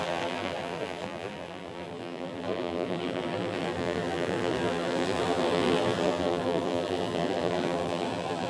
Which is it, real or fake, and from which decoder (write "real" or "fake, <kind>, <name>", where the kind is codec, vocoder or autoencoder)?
fake, vocoder, BigVGAN v2